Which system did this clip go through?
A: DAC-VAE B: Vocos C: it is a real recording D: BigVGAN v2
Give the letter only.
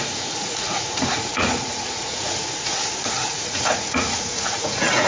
B